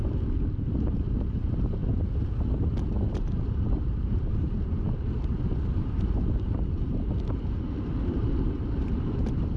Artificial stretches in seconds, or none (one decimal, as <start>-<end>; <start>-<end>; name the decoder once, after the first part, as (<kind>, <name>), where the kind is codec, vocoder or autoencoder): 1.1-1.8 (vocoder, BigVGAN v2); 2.8-9.6